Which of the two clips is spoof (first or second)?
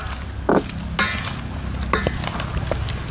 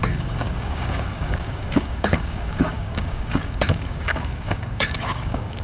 second